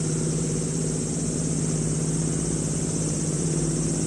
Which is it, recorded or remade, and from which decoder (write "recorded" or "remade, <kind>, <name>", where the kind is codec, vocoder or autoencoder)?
remade, vocoder, BigVGAN v2